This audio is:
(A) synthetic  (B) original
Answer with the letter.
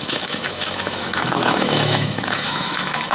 A